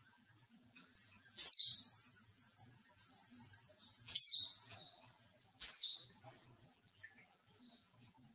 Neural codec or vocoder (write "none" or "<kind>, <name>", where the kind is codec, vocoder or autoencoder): vocoder, BigVGAN v2